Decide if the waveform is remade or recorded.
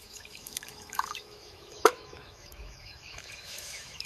remade